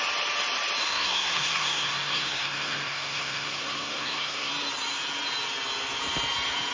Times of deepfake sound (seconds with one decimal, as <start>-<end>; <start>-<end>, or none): 0.8-4.5